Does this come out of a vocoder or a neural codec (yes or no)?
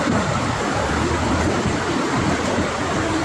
yes